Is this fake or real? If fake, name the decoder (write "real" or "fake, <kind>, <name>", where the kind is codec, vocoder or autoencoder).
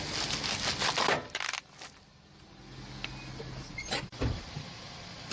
real